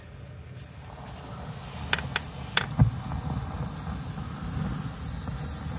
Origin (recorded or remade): recorded